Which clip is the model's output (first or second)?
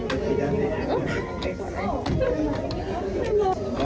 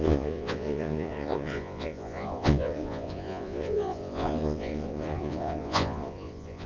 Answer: second